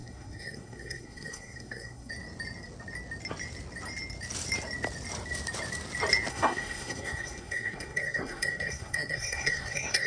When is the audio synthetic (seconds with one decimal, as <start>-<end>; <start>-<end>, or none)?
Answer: 0.0-2.1; 6.3-10.1